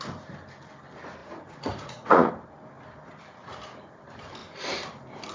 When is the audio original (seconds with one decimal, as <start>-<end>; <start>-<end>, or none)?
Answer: 0.0-1.2; 2.3-5.3